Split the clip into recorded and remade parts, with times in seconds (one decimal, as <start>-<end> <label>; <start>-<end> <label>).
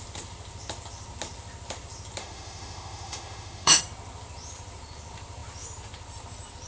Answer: 0.0-2.2 recorded; 2.2-3.8 remade; 3.8-6.7 recorded